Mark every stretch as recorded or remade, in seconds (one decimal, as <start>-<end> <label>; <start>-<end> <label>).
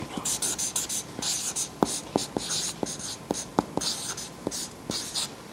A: 0.0-5.5 recorded